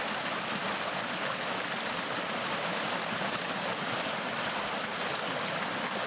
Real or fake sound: real